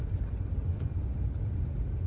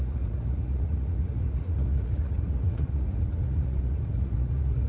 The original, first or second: first